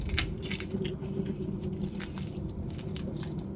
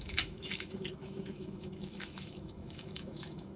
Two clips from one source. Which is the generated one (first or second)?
second